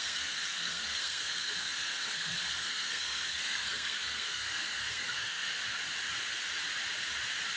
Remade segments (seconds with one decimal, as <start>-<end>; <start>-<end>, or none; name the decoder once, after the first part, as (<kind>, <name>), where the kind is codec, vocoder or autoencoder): 0.0-5.6 (codec, SNAC)